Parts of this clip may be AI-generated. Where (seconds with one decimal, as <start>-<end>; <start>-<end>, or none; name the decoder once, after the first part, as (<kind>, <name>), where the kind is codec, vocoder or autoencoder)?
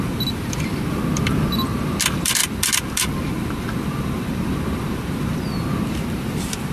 none